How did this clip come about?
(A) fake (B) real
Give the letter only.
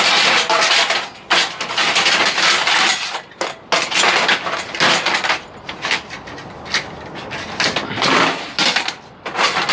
B